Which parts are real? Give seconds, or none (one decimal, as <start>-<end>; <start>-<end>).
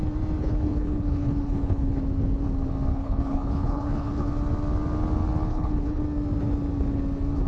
0.0-0.4; 2.0-2.9; 4.3-5.5; 6.0-7.5